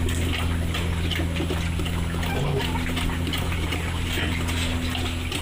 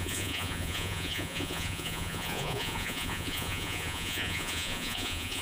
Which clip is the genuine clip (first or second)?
first